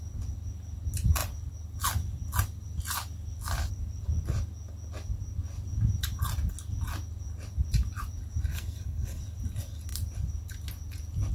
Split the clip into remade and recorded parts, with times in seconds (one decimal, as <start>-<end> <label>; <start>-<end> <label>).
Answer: 0.0-8.5 recorded; 8.5-9.2 remade; 9.2-11.3 recorded